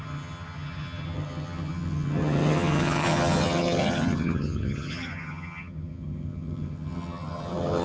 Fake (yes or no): yes